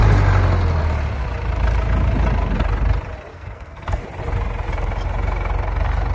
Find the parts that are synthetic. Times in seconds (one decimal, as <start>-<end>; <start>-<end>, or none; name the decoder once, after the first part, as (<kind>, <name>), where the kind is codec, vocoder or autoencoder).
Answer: 3.3-4.0 (codec, SNAC)